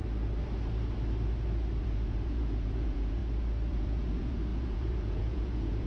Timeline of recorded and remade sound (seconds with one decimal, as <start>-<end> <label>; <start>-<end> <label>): 0.0-1.8 recorded; 1.8-3.2 remade; 3.2-3.7 recorded; 3.7-5.9 remade